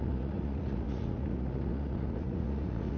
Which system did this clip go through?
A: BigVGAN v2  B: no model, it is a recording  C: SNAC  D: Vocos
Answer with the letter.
D